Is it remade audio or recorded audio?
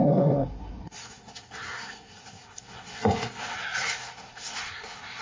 remade